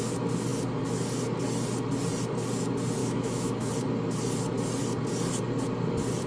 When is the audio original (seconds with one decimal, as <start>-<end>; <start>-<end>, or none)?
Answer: 0.0-3.0; 3.7-6.3